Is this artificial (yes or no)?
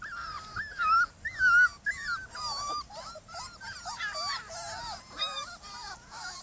no